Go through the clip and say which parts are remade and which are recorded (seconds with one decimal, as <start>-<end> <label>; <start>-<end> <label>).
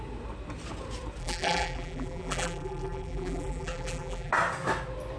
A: 0.0-1.2 recorded; 1.2-4.3 remade; 4.3-5.2 recorded